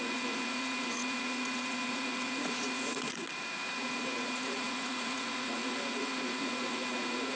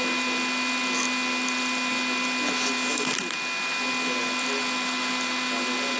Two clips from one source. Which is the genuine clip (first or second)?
second